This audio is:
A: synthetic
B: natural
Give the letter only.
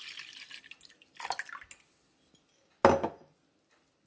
B